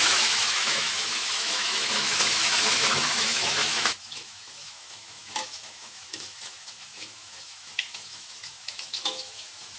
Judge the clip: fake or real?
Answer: fake